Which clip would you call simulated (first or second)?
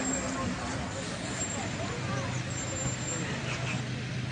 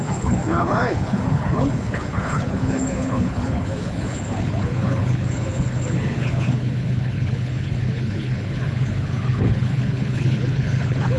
second